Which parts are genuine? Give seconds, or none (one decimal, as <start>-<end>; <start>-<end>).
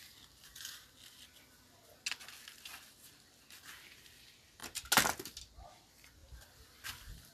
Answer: 0.0-7.3